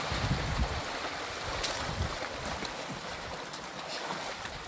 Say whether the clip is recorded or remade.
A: remade